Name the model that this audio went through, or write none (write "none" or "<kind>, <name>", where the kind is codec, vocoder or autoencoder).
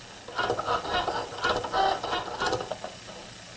none